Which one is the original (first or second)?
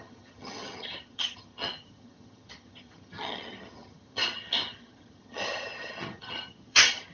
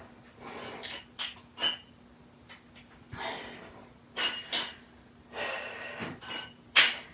second